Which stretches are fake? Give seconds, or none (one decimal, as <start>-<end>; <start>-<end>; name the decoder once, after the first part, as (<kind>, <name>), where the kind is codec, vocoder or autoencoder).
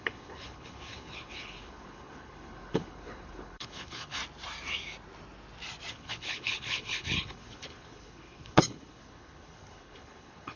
0.0-4.2 (codec, HILCodec); 5.9-10.6